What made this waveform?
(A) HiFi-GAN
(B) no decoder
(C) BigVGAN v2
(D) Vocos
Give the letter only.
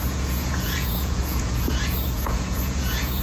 D